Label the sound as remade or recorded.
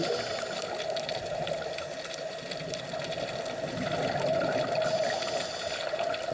recorded